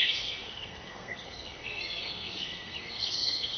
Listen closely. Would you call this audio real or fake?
fake